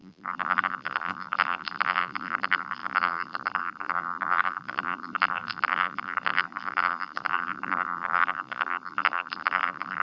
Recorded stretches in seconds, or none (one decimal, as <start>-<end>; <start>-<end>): none